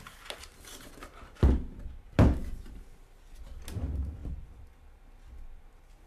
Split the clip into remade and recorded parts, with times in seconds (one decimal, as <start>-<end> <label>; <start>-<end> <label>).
0.0-0.5 recorded; 0.5-1.8 remade; 1.8-6.1 recorded